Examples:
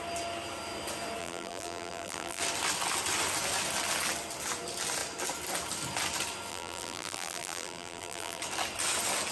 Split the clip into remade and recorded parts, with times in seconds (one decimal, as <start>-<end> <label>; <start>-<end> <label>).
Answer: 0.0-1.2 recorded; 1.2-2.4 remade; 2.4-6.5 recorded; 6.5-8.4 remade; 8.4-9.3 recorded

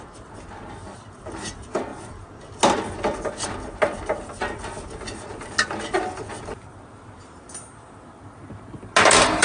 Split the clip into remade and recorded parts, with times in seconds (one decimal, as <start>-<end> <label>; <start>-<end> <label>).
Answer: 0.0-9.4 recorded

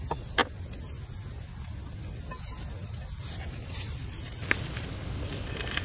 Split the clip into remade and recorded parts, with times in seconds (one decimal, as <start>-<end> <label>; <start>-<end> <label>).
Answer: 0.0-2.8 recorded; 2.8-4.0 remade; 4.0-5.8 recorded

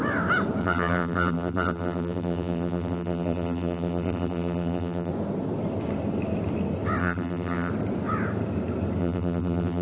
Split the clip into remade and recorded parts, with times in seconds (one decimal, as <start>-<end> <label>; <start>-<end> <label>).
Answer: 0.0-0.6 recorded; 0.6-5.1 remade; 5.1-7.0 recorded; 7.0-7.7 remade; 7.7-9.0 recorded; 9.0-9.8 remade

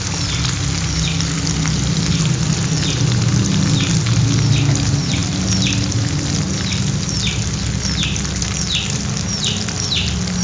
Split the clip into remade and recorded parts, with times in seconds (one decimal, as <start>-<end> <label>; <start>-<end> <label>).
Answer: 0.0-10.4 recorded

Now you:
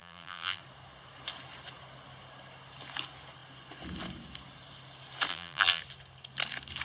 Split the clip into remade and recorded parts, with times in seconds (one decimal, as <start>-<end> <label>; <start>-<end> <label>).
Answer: 0.0-0.6 remade; 0.6-5.3 recorded; 5.3-5.8 remade; 5.8-6.8 recorded